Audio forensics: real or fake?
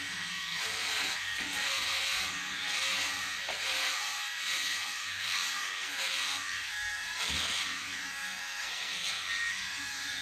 fake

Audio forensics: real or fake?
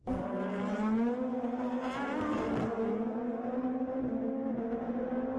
real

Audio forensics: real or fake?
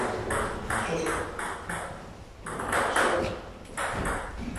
real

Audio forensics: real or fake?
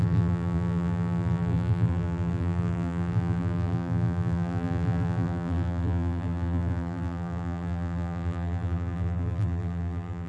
fake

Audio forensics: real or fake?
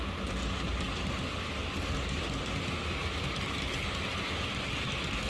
real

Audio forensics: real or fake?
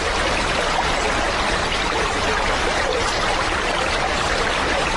real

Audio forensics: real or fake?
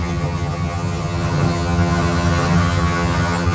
fake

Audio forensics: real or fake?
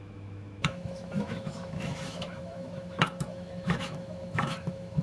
fake